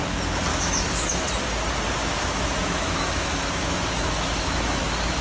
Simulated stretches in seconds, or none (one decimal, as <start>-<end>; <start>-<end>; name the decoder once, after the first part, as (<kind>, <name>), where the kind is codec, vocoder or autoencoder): 0.5-1.2 (autoencoder, DAC-VAE); 2.0-4.8